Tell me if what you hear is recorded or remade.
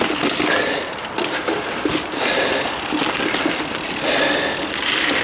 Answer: recorded